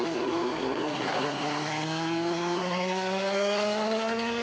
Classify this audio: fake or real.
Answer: fake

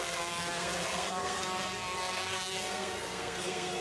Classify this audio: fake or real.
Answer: fake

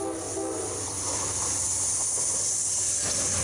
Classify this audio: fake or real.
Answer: real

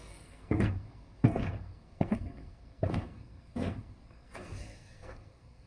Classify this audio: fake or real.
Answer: fake